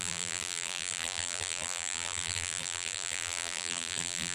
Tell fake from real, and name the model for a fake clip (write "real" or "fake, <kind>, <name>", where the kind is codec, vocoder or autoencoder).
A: fake, vocoder, BigVGAN v2